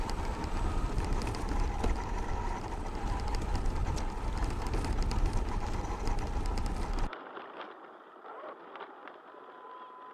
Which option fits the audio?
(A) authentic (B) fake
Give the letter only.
A